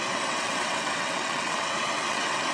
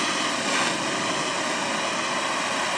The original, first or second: second